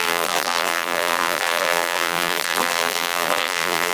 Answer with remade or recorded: remade